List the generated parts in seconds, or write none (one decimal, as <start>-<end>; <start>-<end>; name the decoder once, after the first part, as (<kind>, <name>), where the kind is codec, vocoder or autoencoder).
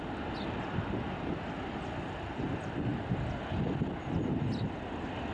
none